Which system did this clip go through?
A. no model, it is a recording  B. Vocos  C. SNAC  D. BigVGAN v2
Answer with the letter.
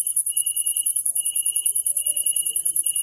D